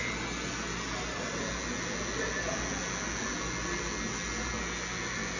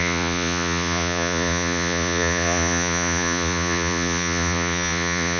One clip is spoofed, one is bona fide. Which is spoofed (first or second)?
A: second